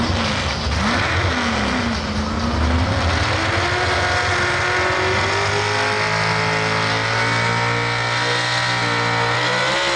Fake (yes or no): no